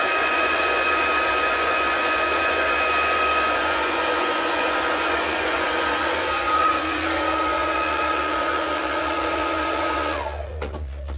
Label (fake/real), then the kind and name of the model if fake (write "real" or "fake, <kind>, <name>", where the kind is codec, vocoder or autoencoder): fake, vocoder, Vocos